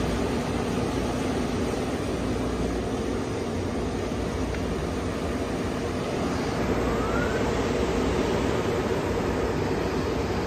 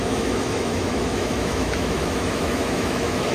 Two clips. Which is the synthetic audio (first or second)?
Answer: second